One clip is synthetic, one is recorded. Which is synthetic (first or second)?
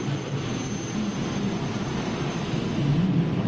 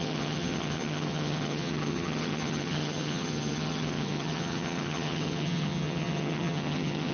second